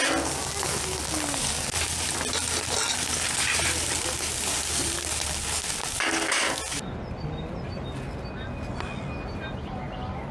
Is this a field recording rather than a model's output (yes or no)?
yes